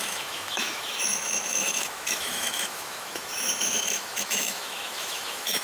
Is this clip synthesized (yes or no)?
yes